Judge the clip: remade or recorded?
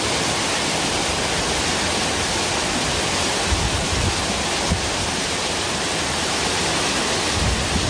recorded